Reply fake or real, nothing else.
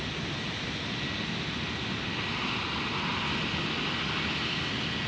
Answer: real